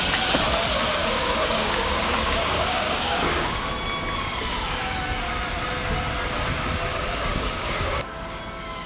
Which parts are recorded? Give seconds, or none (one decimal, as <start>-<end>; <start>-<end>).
0.0-1.0; 3.7-6.9; 8.4-8.9